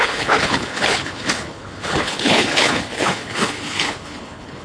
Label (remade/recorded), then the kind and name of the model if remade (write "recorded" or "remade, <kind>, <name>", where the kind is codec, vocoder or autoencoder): remade, codec, HILCodec